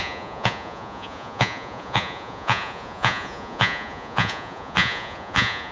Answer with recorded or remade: remade